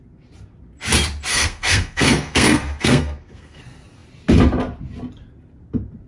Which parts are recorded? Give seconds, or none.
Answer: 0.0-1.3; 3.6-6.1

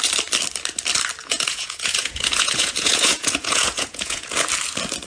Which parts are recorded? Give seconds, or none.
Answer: 0.0-1.2; 4.3-5.1

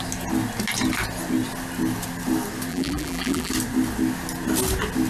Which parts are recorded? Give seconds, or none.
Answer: 0.0-2.7; 3.5-5.1

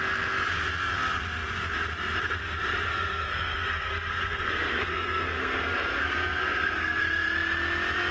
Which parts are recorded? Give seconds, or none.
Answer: 0.0-2.9; 7.0-8.1

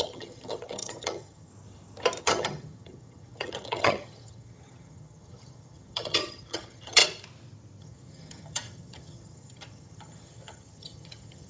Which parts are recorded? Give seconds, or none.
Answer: 1.5-2.2; 7.0-7.8

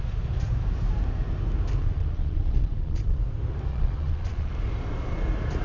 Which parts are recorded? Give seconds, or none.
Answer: 0.0-1.8; 3.2-3.7; 4.5-5.6

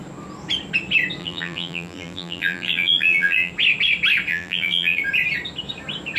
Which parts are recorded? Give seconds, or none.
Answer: 0.0-1.2; 3.5-4.3; 5.0-6.2